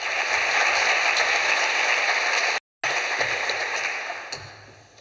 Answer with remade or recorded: recorded